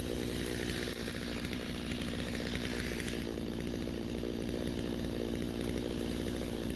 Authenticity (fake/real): real